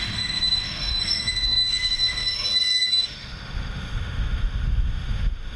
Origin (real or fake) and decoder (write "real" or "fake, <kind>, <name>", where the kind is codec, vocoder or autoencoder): fake, autoencoder, DAC-VAE